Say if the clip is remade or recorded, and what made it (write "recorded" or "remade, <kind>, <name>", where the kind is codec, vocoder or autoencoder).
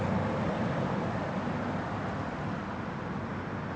recorded